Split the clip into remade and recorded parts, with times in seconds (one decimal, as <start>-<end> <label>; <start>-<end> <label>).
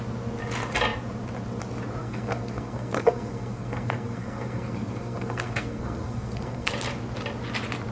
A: 0.0-2.0 recorded; 2.0-6.7 remade; 6.7-7.9 recorded